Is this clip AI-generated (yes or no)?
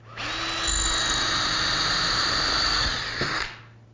no